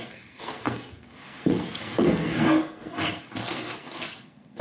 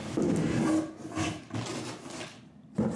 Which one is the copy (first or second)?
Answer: first